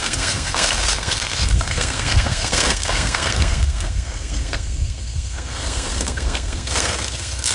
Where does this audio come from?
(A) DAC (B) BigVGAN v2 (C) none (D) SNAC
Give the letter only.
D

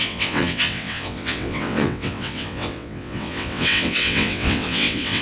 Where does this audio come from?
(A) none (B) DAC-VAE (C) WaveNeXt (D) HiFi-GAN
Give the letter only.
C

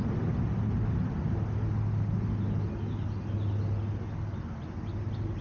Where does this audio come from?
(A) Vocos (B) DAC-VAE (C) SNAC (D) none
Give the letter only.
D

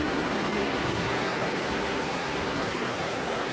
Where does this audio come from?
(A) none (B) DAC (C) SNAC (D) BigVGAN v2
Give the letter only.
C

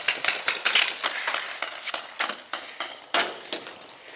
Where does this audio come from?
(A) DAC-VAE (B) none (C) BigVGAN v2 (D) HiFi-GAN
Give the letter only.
B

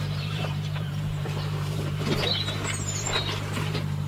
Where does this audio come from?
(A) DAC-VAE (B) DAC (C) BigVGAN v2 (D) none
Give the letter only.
C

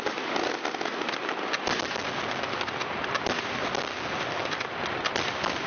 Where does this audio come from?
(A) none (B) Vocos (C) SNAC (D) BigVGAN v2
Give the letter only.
A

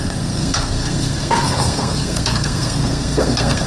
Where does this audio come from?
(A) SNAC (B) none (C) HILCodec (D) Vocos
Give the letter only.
A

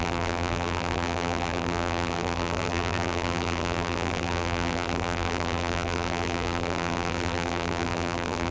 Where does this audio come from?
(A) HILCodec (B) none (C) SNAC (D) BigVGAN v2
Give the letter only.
D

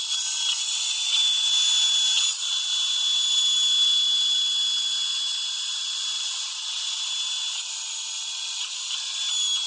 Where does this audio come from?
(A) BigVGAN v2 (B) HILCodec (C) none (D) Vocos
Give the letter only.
C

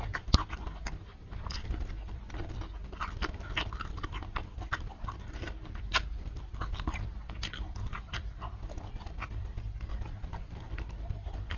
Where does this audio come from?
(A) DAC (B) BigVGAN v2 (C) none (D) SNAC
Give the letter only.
B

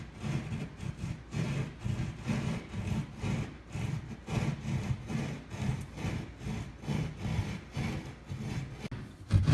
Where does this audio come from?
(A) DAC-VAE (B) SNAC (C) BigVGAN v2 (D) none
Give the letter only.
D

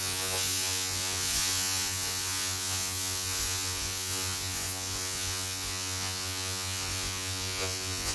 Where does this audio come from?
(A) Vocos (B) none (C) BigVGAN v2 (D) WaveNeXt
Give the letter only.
A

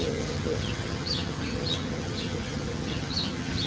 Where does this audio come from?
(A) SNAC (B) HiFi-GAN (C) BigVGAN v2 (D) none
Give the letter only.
B